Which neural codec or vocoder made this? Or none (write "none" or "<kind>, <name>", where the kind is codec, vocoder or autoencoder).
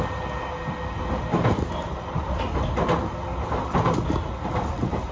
none